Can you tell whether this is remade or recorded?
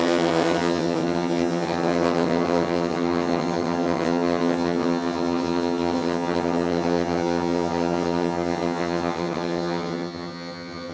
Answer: remade